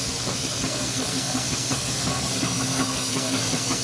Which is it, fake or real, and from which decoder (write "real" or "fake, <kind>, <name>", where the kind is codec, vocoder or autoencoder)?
fake, codec, SNAC